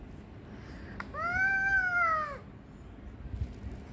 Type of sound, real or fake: real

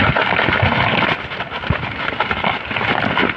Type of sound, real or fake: real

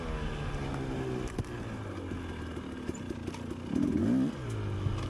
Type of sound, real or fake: real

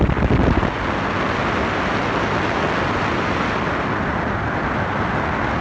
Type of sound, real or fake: real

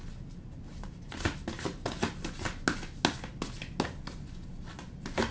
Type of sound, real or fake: real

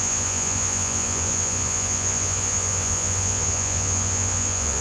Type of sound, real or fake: fake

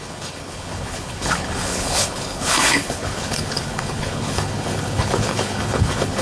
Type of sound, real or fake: fake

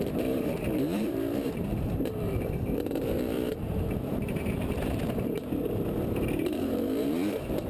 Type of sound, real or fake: fake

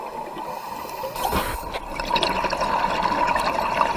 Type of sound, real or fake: real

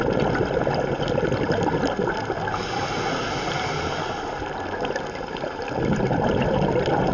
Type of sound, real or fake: real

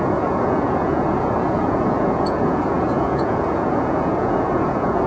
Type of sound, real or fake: fake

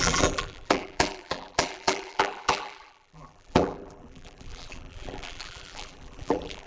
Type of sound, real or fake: fake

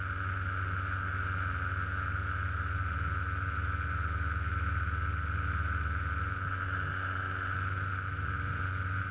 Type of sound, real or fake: real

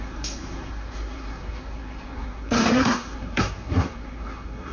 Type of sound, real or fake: fake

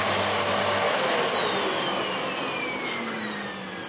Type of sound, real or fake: real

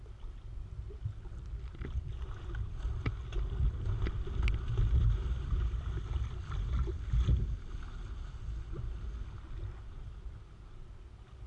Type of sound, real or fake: real